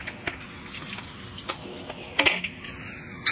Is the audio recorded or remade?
recorded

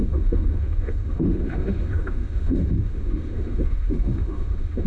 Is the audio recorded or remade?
remade